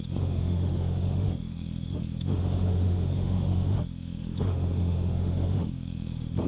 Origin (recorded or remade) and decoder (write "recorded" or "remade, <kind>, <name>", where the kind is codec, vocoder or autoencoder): remade, autoencoder, DAC-VAE